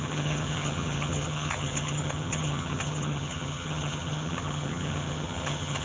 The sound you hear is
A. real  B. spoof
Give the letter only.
B